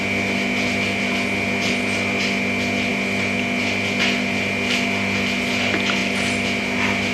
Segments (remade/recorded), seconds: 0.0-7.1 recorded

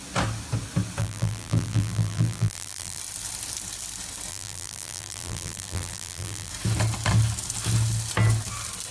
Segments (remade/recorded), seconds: 0.0-1.0 recorded; 1.0-3.0 remade; 3.0-4.3 recorded; 4.3-6.5 remade; 6.5-8.9 recorded